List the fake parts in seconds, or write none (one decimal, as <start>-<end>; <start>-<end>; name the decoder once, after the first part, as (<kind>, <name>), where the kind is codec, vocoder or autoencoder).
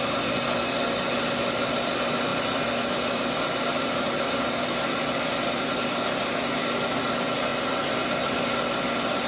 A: 2.3-5.3 (vocoder, BigVGAN v2); 7.5-8.6